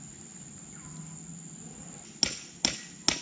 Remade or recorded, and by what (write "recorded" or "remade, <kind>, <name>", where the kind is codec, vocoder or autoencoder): recorded